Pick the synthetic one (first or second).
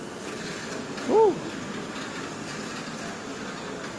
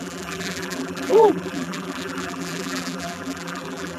second